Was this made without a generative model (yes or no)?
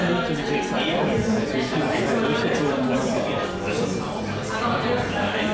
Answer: yes